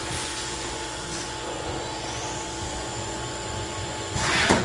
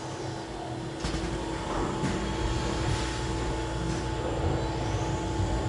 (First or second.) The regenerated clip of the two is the first